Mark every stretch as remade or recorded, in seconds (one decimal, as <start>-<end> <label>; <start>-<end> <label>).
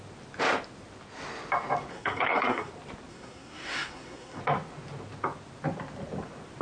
0.0-1.9 recorded; 1.9-2.7 remade; 2.7-3.1 recorded; 3.1-4.4 remade; 4.4-6.6 recorded